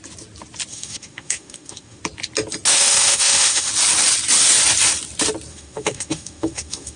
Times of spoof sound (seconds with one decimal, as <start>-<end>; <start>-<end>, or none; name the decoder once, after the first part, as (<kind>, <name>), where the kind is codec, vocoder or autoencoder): 0.7-2.0 (autoencoder, DAC-VAE); 2.7-3.7; 5.5-7.0